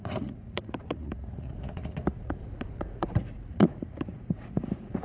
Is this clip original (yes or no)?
no